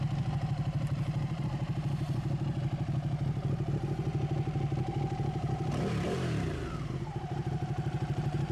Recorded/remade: remade